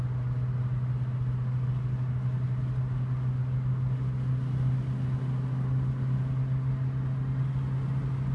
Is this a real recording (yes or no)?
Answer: yes